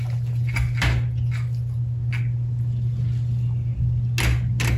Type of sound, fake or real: real